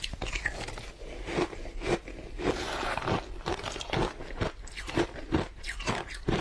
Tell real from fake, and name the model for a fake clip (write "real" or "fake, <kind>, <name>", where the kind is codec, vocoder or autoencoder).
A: real